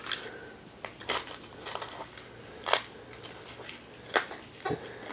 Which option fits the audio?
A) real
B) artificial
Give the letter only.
A